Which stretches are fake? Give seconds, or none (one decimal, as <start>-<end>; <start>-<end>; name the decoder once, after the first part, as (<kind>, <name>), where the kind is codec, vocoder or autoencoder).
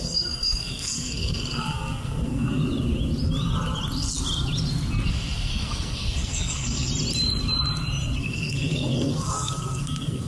0.0-2.6 (codec, SNAC); 5.1-6.9; 8.2-10.3